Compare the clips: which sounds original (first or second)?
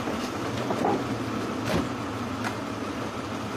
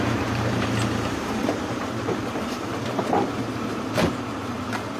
first